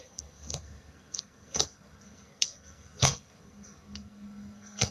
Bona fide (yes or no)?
no